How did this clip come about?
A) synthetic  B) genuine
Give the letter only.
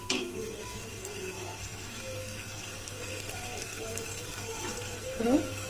A